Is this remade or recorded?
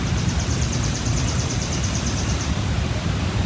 remade